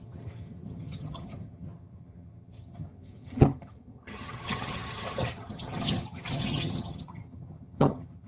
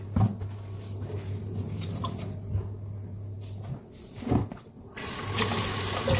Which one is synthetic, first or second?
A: first